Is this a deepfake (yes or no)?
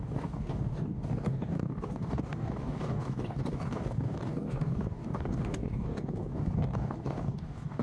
yes